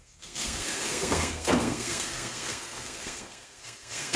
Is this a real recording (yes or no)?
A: no